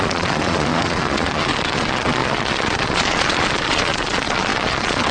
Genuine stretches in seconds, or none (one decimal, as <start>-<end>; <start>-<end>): none